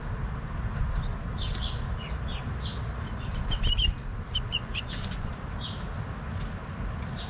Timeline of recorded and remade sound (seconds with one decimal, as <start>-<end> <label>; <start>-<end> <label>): 0.0-4.5 recorded; 4.5-5.3 remade; 5.3-7.3 recorded